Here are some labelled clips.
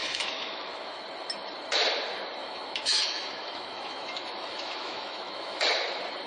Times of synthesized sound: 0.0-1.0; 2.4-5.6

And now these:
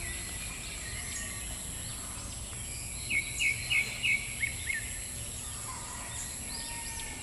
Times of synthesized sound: none

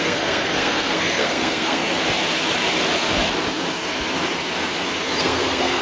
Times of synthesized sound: 0.0-1.8; 5.2-5.8

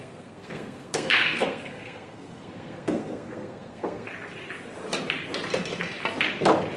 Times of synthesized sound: 0.0-4.1

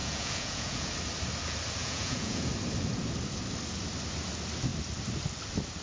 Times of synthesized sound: 0.0-0.9; 1.8-2.5